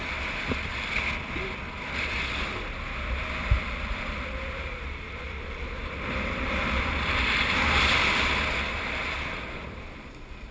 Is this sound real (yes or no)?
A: yes